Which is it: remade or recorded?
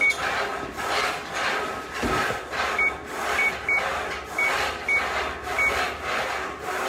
recorded